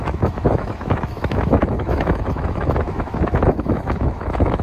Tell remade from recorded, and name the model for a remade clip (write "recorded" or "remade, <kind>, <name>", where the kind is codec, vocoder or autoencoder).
remade, autoencoder, DAC-VAE